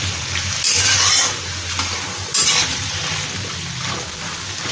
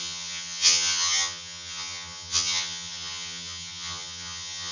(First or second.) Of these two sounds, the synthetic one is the second